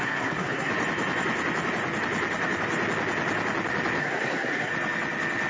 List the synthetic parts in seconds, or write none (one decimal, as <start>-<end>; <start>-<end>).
0.0-0.7; 4.0-4.7

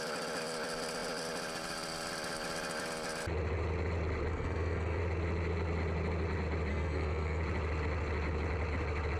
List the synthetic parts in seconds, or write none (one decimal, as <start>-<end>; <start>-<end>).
4.3-5.0; 6.7-7.4

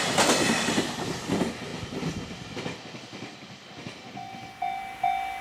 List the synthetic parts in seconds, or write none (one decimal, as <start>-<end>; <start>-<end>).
none

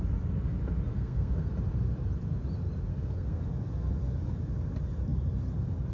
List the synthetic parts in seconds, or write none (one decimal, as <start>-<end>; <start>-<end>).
0.9-1.5; 2.9-3.4

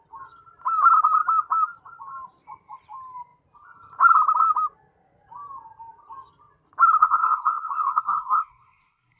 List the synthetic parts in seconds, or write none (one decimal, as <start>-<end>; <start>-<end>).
7.0-9.2

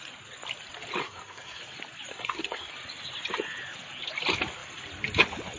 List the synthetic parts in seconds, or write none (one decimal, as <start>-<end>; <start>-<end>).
1.0-1.6; 2.1-2.7

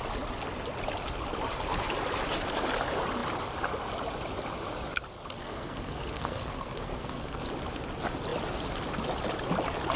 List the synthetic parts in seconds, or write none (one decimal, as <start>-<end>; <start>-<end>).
5.4-7.4

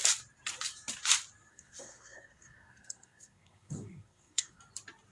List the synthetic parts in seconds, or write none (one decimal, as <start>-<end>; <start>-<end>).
1.5-4.6